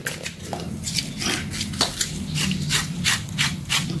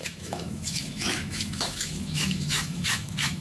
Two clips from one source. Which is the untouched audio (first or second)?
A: first